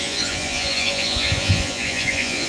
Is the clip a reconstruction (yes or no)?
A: yes